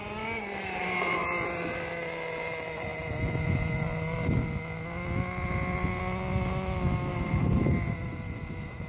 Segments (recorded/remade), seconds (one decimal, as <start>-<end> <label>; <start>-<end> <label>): 0.0-0.8 recorded; 0.8-1.9 remade; 1.9-7.1 recorded; 7.1-8.1 remade; 8.1-8.9 recorded